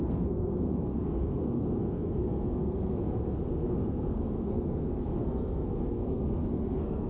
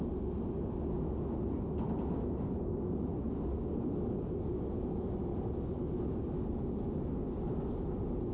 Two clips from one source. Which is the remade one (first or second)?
first